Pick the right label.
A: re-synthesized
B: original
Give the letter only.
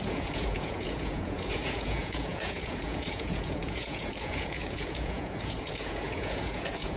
A